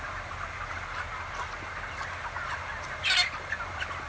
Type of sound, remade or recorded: recorded